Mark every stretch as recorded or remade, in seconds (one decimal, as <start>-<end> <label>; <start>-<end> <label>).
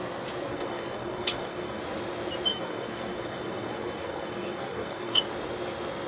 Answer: 0.0-0.5 recorded; 0.5-1.8 remade; 1.8-2.5 recorded; 2.5-5.2 remade; 5.2-6.1 recorded